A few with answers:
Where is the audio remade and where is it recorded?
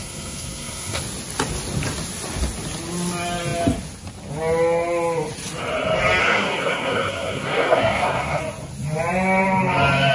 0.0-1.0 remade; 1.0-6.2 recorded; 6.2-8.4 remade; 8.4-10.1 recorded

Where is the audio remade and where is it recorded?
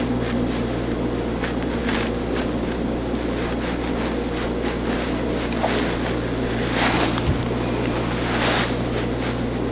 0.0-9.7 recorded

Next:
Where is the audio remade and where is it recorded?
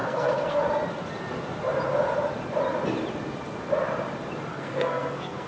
0.0-0.6 remade; 0.6-4.5 recorded; 4.5-5.5 remade